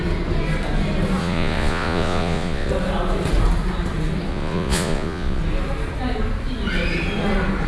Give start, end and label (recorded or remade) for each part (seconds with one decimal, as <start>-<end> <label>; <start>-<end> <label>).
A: 0.0-1.2 recorded; 1.2-2.7 remade; 2.7-4.3 recorded; 4.3-5.4 remade; 5.4-7.7 recorded